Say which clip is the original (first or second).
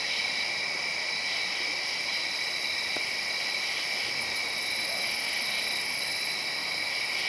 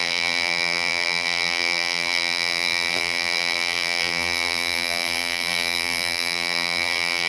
first